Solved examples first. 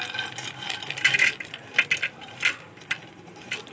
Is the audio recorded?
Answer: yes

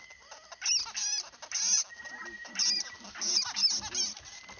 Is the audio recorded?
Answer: yes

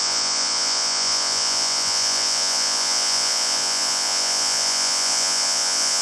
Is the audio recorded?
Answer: no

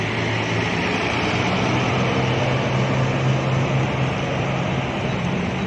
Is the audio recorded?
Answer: yes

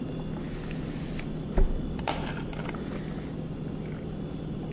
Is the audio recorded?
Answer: yes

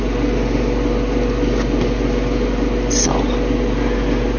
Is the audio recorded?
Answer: yes